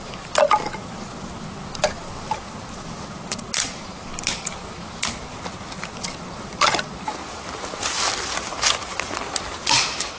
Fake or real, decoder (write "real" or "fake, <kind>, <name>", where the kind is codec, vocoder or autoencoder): real